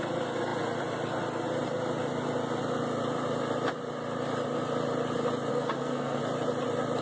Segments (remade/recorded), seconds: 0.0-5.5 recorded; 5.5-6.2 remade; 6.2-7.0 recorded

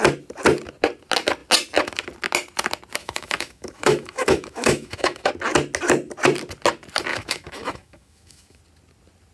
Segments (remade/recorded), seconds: 0.0-3.0 recorded; 3.0-5.3 remade; 5.3-7.1 recorded; 7.1-8.6 remade; 8.6-9.3 recorded

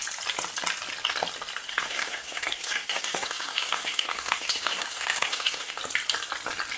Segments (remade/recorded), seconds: 0.0-1.7 recorded; 1.7-5.8 remade; 5.8-6.8 recorded